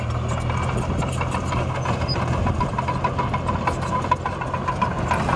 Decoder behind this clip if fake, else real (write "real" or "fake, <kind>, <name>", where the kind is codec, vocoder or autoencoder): real